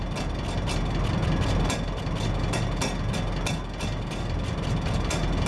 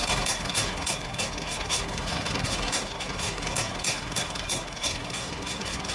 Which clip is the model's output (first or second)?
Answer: second